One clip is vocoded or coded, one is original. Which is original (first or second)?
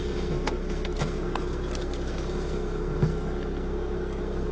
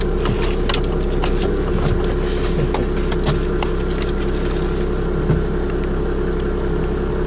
second